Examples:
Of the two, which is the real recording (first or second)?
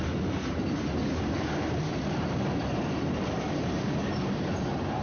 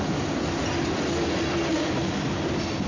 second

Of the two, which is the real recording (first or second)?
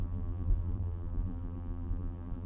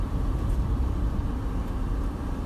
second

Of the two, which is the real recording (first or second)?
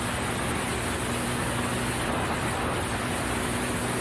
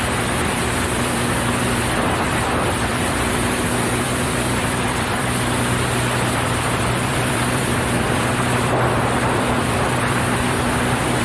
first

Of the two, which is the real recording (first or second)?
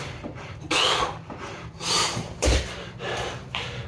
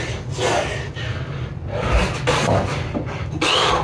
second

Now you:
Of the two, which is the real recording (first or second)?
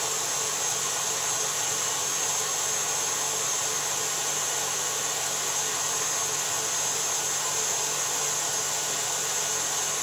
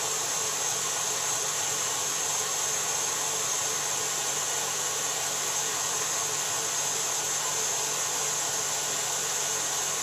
first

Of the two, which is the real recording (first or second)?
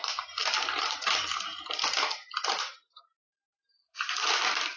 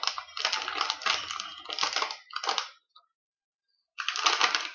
second